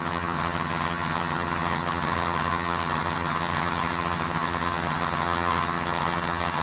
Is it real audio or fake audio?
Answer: fake